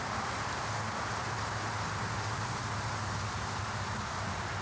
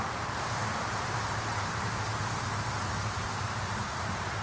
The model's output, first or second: second